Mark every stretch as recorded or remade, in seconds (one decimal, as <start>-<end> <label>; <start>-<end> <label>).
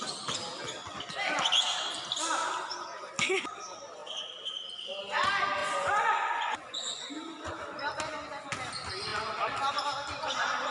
0.0-5.6 recorded; 5.6-7.1 remade; 7.1-10.7 recorded